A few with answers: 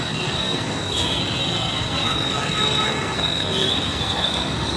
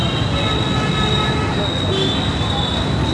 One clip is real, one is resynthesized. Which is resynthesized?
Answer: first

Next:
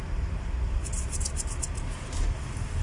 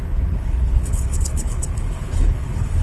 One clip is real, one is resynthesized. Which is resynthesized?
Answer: second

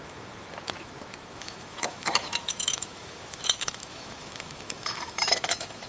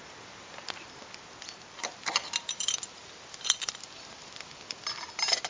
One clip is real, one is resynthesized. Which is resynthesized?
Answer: first